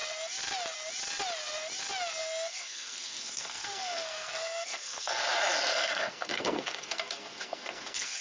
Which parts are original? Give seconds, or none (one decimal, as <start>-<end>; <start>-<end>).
0.0-2.5; 5.2-5.7